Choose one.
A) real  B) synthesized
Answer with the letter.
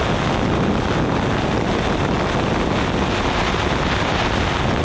A